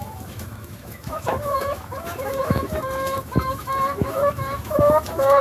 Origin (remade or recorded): remade